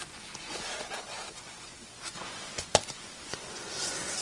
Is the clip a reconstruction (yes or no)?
yes